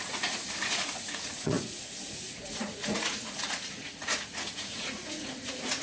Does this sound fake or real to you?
fake